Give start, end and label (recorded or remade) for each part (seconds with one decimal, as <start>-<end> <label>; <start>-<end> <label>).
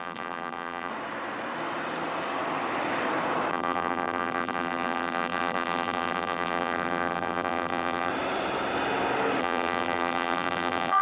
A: 0.0-0.9 remade; 0.9-3.5 recorded; 3.5-8.1 remade; 8.1-9.4 recorded; 9.4-11.0 remade